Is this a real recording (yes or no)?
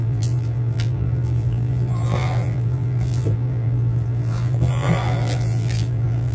no